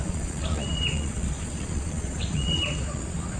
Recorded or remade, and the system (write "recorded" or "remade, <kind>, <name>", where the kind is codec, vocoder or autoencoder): remade, vocoder, Vocos